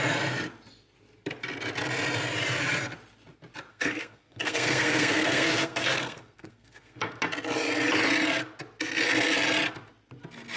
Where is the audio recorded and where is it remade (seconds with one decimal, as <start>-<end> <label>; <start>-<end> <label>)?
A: 0.0-3.7 recorded; 3.7-7.2 remade; 7.2-10.6 recorded